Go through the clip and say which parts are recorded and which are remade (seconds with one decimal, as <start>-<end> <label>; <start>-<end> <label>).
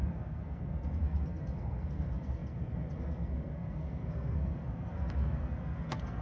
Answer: 0.0-6.2 remade